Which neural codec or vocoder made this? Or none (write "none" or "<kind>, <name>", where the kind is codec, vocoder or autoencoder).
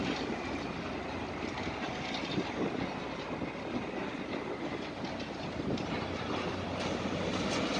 none